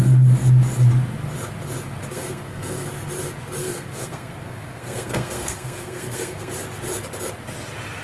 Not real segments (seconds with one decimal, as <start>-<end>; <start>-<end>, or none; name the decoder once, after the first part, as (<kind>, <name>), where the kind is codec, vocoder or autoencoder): 2.1-2.9 (codec, SNAC); 3.6-6.5

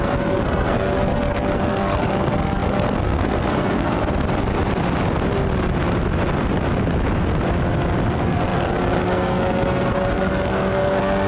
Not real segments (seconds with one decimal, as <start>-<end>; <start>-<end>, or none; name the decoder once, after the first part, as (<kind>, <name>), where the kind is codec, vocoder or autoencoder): 0.0-4.0 (codec, SNAC); 8.1-11.3